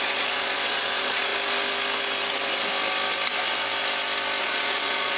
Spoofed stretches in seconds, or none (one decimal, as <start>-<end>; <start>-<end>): 0.0-1.3; 4.4-5.2